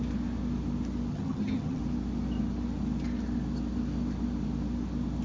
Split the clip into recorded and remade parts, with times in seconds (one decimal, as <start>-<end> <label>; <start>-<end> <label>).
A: 0.0-1.1 recorded; 1.1-1.8 remade; 1.8-5.2 recorded